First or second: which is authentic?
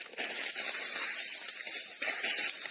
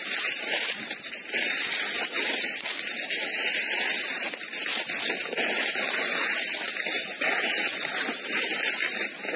first